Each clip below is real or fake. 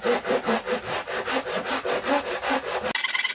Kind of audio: real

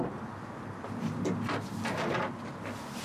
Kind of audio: real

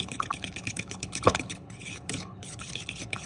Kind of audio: fake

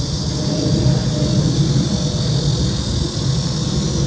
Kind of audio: real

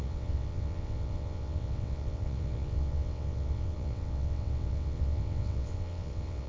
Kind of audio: fake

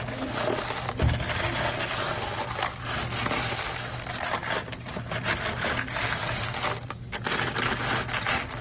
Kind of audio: real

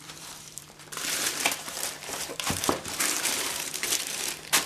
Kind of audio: fake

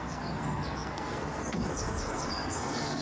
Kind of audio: fake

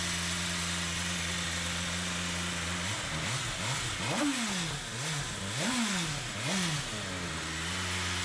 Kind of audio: real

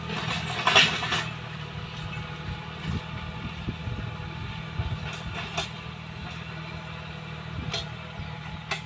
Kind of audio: real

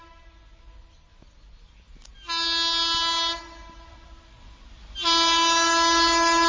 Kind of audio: real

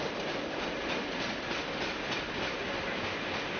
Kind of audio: real